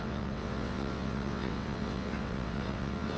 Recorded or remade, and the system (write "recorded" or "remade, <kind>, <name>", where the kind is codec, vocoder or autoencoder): remade, vocoder, WaveNeXt